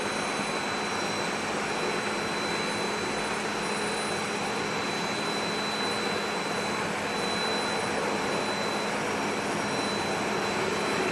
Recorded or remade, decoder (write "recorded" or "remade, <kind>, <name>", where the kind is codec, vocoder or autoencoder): remade, vocoder, BigVGAN v2